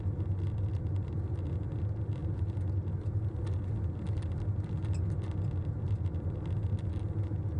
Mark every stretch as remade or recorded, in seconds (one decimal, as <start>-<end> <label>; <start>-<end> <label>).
0.0-7.6 recorded